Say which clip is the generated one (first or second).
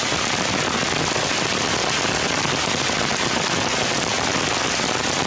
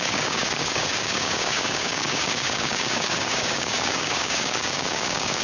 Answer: second